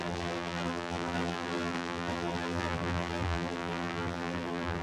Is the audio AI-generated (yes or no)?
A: yes